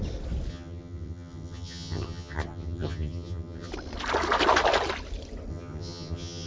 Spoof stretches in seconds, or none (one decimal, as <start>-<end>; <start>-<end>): 0.5-3.7; 5.5-6.5